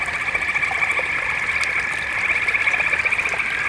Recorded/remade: recorded